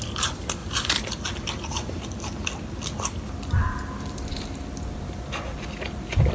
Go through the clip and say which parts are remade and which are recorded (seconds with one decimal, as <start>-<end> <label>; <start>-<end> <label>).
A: 0.0-0.6 recorded; 0.6-1.2 remade; 1.2-6.3 recorded